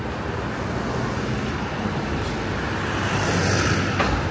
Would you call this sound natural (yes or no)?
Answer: yes